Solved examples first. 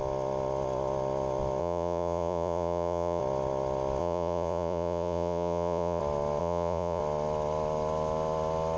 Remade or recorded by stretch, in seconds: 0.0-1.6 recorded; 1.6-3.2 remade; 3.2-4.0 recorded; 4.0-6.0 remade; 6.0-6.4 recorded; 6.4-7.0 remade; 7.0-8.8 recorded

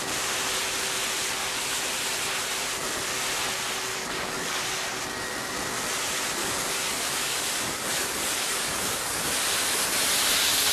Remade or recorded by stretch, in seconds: 0.0-3.9 recorded; 3.9-4.6 remade; 4.6-6.4 recorded; 6.4-9.3 remade; 9.3-10.7 recorded

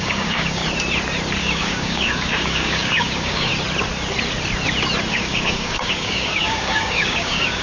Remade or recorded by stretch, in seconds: 0.0-0.6 remade; 0.6-1.4 recorded; 1.4-3.5 remade; 3.5-5.1 recorded; 5.1-7.6 remade

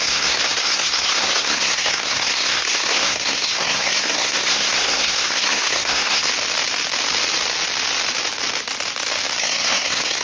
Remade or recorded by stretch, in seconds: 0.0-6.3 remade; 6.3-9.4 recorded; 9.4-10.2 remade

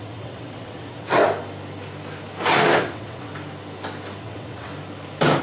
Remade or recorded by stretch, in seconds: 0.0-1.2 remade; 1.2-2.8 recorded; 2.8-3.3 remade; 3.3-4.2 recorded; 4.2-4.7 remade; 4.7-5.4 recorded

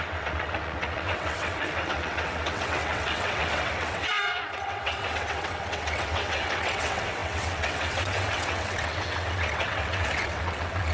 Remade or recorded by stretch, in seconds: 0.0-10.9 remade

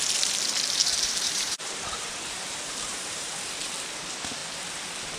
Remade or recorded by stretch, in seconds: 0.0-0.8 recorded; 0.8-3.7 remade; 3.7-5.2 recorded